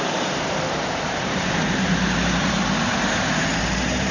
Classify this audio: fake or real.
fake